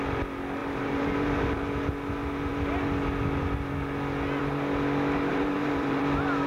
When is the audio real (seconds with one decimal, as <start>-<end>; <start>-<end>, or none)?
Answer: 0.0-0.6; 1.6-5.3; 6.0-6.5